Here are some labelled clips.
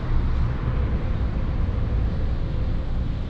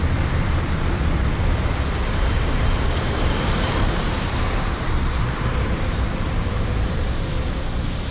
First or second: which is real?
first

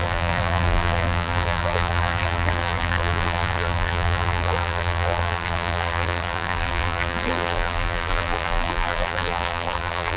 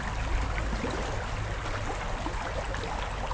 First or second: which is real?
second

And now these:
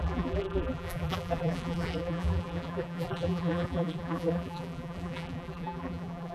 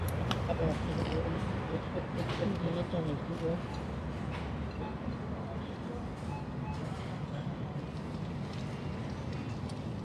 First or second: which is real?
second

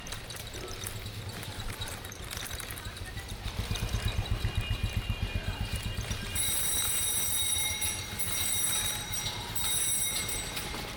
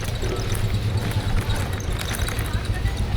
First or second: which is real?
second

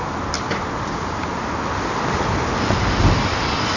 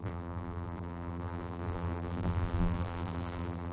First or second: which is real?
first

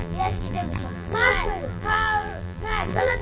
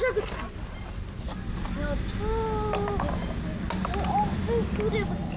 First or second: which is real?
second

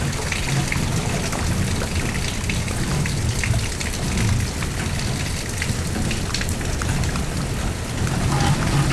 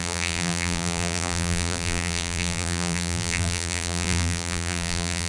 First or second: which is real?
first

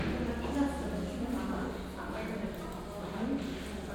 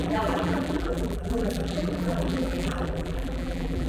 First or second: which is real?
first